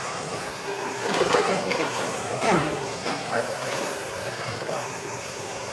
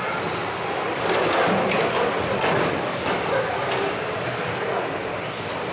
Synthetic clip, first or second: first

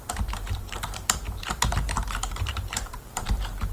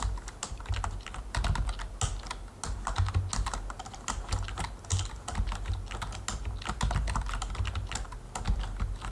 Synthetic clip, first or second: first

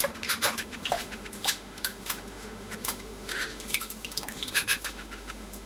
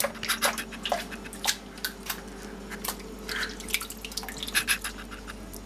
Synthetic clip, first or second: first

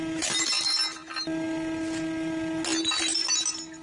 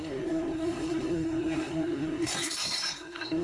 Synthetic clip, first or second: second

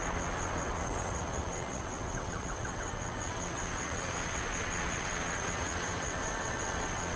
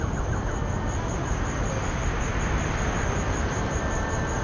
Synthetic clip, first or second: first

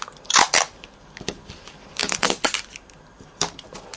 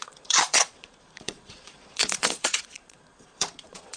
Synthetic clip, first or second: second